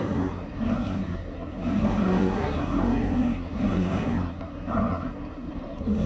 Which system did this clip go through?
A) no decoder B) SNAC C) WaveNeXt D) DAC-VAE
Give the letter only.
B